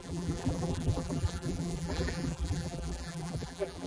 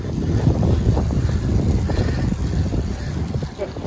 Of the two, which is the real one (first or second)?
second